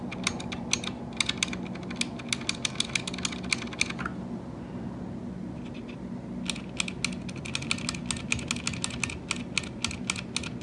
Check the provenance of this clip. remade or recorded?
recorded